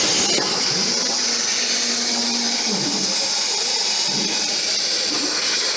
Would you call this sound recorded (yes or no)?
yes